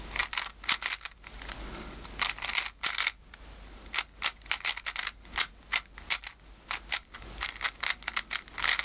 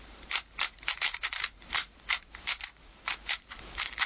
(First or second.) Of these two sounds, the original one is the first